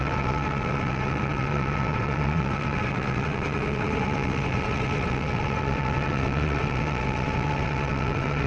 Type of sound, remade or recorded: remade